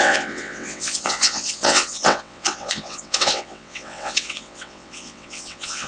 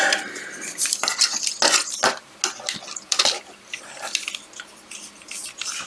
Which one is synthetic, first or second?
first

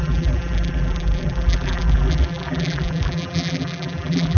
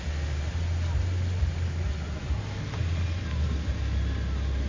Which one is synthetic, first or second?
first